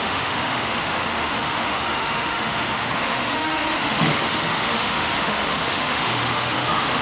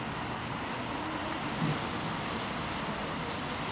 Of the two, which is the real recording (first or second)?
second